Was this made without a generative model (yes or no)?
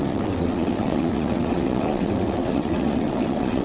no